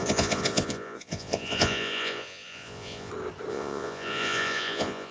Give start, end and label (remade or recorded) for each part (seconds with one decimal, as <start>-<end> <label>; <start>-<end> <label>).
0.0-3.1 remade; 3.1-3.5 recorded; 3.5-5.1 remade